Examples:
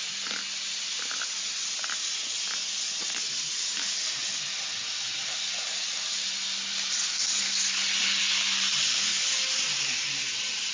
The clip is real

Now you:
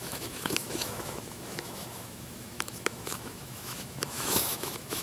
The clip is fake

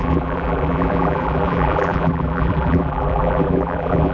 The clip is fake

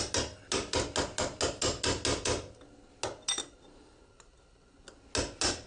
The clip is real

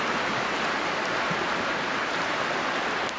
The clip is fake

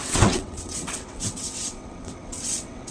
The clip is fake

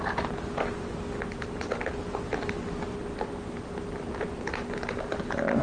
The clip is real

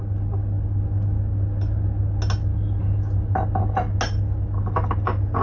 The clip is real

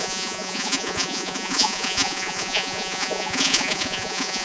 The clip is fake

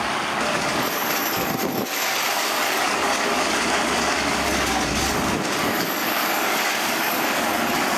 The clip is fake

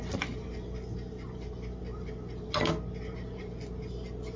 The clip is real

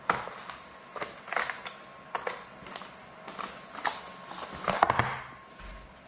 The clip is real